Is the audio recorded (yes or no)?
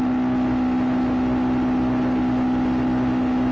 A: yes